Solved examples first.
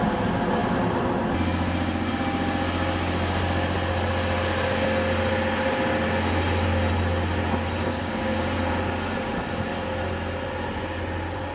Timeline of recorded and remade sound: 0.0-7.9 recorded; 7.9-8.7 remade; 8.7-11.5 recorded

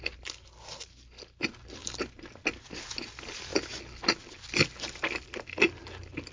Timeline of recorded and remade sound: 0.0-6.3 recorded

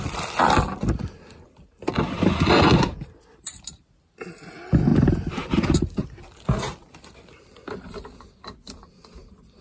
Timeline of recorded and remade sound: 0.0-9.6 recorded

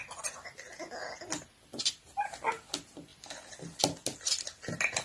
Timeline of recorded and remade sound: 0.0-5.0 recorded

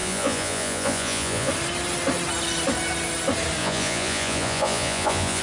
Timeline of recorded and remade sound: 0.0-1.5 remade; 1.5-3.6 recorded; 3.6-5.4 remade

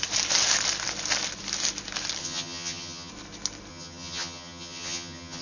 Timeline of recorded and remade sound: 0.0-2.2 recorded; 2.2-3.1 remade; 3.1-3.7 recorded; 3.7-5.4 remade